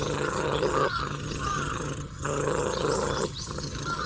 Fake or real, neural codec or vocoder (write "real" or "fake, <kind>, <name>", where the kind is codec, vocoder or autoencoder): fake, vocoder, HiFi-GAN